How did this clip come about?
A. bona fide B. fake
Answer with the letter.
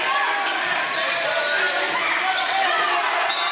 A